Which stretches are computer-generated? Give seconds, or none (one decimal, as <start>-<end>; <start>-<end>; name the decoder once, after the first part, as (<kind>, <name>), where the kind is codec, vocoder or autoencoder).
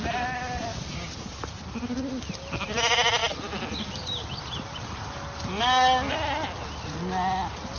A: none